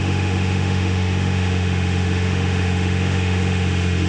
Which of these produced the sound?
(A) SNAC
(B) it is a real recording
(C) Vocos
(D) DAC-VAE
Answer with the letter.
D